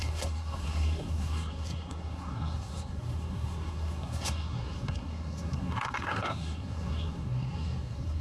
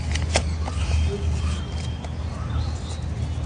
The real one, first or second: second